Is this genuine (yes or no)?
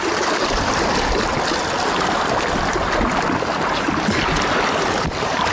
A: yes